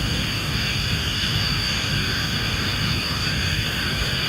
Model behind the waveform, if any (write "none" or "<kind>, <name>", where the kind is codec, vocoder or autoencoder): codec, DAC